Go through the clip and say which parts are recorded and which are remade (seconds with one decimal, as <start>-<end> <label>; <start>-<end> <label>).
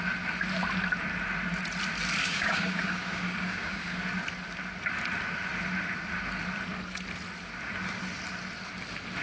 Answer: 0.0-2.2 recorded; 2.2-4.0 remade; 4.0-9.2 recorded